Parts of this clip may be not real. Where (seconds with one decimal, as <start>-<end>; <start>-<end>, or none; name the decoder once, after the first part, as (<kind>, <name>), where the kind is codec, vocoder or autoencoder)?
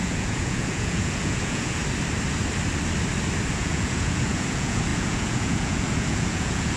0.0-1.8 (vocoder, Vocos); 3.5-6.8